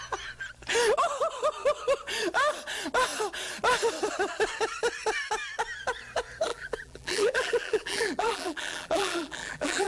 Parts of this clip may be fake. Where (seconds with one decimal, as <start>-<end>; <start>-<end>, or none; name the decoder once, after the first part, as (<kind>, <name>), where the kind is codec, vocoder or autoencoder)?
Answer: 6.5-9.9 (vocoder, BigVGAN v2)